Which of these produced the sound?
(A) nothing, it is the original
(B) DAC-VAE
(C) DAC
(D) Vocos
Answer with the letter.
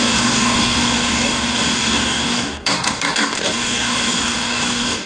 C